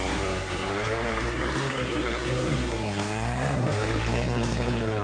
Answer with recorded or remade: remade